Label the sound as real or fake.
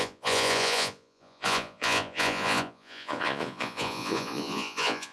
fake